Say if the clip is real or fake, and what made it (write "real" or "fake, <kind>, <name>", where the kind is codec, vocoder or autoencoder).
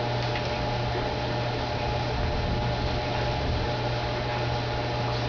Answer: real